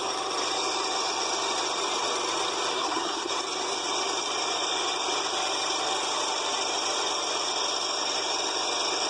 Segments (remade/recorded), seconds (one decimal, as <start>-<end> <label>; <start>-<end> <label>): 0.0-2.7 recorded; 2.7-3.3 remade; 3.3-9.1 recorded